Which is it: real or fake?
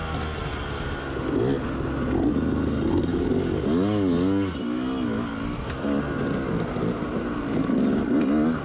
real